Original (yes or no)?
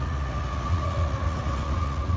no